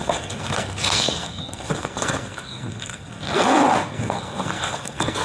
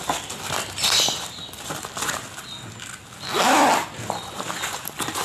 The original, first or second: second